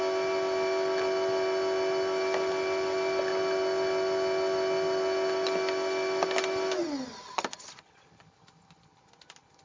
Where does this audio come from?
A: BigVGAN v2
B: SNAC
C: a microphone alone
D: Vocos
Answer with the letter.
C